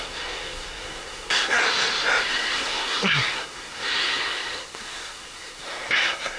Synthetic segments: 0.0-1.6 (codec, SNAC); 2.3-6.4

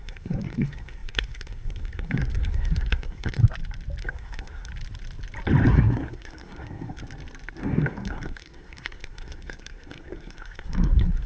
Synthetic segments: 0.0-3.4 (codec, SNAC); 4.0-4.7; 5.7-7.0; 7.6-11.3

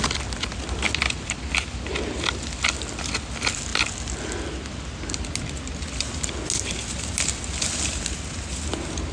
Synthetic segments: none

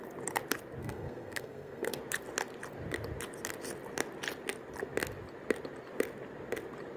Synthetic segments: 0.8-2.0 (codec, SNAC)

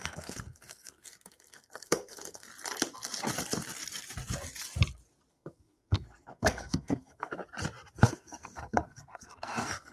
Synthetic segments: 0.0-2.5 (codec, SNAC); 5.3-7.4; 8.0-9.9